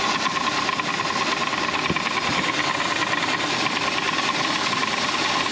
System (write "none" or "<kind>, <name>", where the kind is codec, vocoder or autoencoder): none